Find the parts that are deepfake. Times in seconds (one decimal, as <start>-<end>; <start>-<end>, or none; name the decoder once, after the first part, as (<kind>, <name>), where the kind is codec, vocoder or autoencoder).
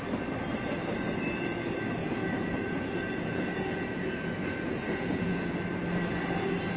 2.0-5.6 (vocoder, Vocos)